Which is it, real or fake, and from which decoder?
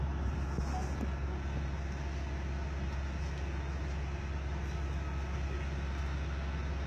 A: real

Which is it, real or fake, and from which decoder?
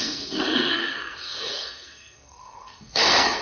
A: fake, codec, SNAC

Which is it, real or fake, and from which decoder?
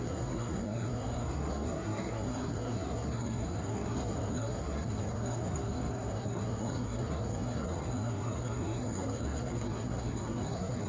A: fake, codec, SNAC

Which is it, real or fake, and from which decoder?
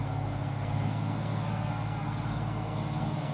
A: fake, codec, SNAC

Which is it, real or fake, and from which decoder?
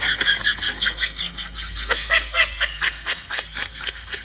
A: fake, codec, SNAC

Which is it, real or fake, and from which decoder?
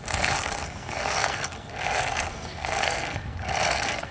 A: fake, codec, SNAC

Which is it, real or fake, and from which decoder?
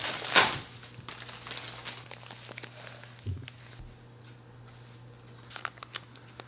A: real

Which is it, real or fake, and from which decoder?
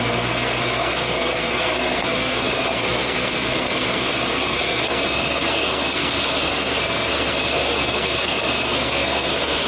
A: fake, codec, SNAC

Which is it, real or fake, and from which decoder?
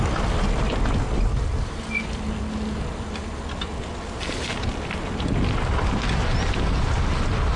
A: real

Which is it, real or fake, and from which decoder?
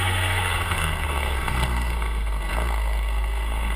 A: fake, codec, SNAC